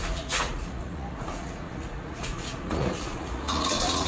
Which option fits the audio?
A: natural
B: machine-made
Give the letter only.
B